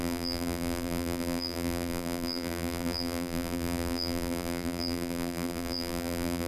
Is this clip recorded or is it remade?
remade